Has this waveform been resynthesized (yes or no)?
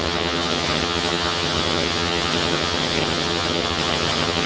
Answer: yes